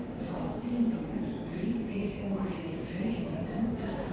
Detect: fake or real fake